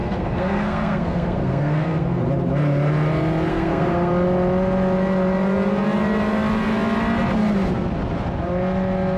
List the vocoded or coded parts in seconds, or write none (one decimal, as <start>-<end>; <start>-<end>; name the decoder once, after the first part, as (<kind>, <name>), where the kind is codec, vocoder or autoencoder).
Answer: 0.0-2.2 (codec, SNAC); 3.5-4.1